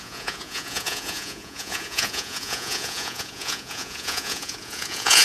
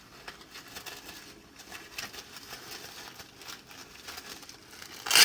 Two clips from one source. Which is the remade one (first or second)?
first